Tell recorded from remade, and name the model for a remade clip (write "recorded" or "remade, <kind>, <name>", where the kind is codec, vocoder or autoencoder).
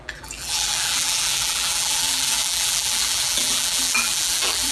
remade, vocoder, BigVGAN v2